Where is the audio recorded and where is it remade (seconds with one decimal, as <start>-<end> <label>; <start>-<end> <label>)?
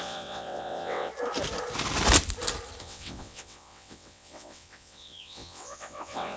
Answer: 0.0-1.1 remade; 1.1-2.8 recorded; 2.8-6.4 remade